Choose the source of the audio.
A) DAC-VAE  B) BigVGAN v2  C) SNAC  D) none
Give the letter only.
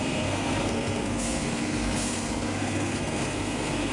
C